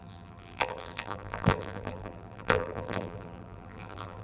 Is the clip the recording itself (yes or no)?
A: no